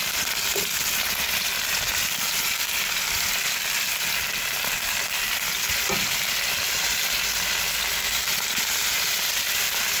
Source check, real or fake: real